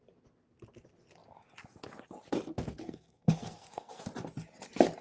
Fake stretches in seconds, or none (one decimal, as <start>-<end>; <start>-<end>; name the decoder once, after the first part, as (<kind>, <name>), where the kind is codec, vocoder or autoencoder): 2.8-4.0 (codec, SNAC)